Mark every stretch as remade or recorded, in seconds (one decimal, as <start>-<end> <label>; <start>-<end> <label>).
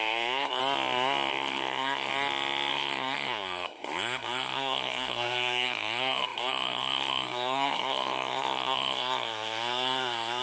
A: 0.0-0.6 remade; 0.6-1.3 recorded; 1.3-2.1 remade; 2.1-2.7 recorded; 2.7-10.4 remade